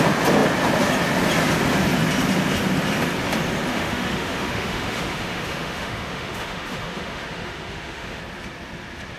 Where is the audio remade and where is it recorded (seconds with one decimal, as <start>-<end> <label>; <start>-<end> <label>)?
0.0-3.7 recorded; 3.7-8.2 remade; 8.2-9.2 recorded